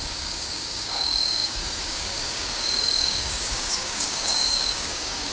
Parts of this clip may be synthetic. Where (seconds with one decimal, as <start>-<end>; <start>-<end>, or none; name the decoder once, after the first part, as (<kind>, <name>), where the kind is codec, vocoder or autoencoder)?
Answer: 0.0-5.3 (codec, DAC)